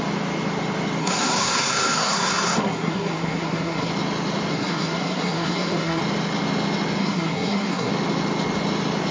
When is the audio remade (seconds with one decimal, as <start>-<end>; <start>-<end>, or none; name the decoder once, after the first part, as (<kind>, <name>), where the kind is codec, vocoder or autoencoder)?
1.0-3.9 (codec, SNAC); 4.5-6.0; 7.0-7.9